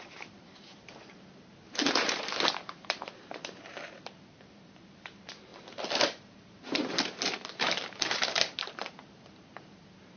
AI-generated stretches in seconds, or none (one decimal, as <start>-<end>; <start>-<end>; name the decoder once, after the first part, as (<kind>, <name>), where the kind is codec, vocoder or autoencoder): 0.0-10.2 (vocoder, BigVGAN v2)